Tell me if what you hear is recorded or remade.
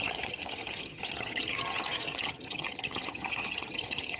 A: remade